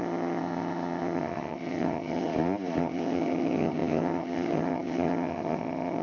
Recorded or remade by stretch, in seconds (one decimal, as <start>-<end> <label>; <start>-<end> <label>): 0.0-2.3 remade; 2.3-2.8 recorded; 2.8-6.0 remade